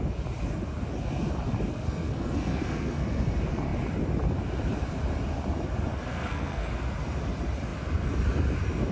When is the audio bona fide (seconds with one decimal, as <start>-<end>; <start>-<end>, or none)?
0.0-1.7; 3.3-5.9; 6.7-8.9